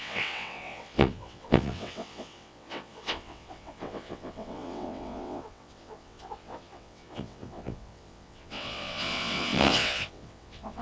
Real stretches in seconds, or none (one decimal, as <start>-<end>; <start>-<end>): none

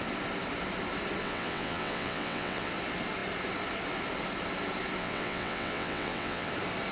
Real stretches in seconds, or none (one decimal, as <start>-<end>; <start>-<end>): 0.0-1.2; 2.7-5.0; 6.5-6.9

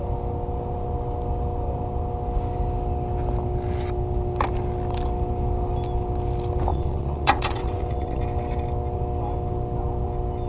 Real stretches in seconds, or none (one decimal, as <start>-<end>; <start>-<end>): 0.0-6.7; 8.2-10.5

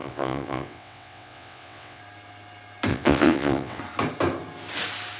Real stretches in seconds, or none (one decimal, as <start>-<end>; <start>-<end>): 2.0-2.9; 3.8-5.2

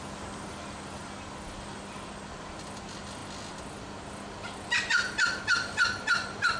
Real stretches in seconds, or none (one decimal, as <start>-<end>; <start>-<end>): 0.0-6.6